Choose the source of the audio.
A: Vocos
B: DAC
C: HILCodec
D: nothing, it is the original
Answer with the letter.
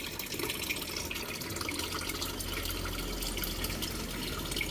D